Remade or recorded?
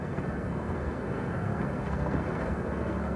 remade